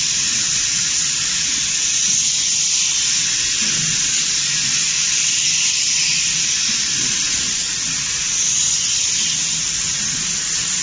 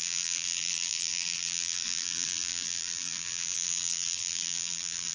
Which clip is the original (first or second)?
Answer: first